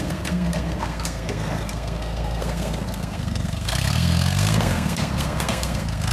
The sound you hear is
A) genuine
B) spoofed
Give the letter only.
B